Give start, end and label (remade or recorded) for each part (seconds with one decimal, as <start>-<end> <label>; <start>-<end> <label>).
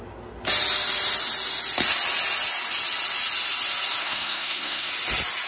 0.0-4.0 recorded; 4.0-4.9 remade; 4.9-5.5 recorded